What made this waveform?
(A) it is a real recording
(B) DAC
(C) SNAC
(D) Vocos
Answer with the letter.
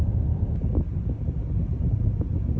A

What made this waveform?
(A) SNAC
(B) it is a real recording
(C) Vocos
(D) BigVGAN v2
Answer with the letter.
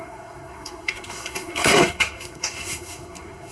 A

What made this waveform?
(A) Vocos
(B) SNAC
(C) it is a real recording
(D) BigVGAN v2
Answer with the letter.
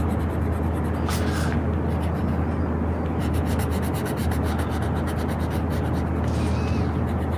C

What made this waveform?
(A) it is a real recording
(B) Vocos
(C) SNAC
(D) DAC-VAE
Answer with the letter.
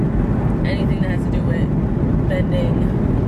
A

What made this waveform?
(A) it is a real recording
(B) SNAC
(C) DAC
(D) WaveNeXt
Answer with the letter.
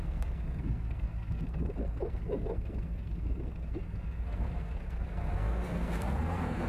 B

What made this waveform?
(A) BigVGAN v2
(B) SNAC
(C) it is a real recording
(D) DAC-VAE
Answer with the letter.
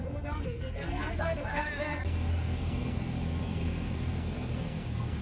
B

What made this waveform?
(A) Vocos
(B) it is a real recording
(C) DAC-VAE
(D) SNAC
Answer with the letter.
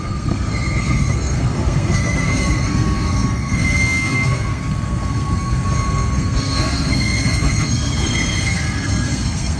D